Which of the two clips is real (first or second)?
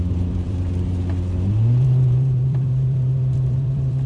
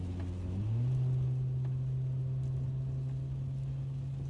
second